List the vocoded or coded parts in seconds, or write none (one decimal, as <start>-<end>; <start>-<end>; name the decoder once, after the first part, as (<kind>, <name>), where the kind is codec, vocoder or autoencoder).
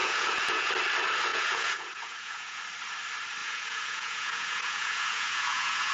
0.0-0.7 (vocoder, Vocos); 1.3-2.6; 3.4-5.9